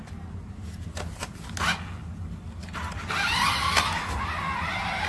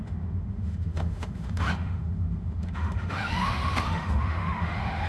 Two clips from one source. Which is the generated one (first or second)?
second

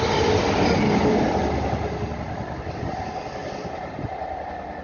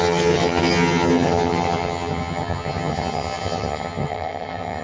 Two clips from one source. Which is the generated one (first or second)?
second